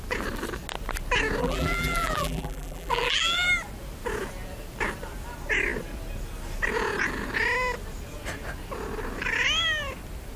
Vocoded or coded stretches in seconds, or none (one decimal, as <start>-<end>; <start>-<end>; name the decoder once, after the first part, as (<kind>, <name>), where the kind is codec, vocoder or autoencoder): 1.4-3.5 (vocoder, BigVGAN v2)